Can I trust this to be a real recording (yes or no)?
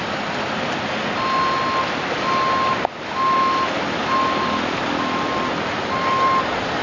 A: yes